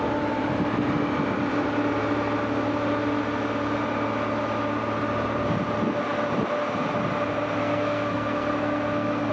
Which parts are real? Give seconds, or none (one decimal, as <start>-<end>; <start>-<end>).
0.0-7.6